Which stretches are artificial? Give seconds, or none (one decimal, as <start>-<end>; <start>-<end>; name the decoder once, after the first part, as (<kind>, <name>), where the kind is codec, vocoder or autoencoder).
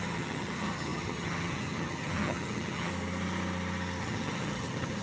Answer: 0.0-2.9 (vocoder, HiFi-GAN); 4.0-5.0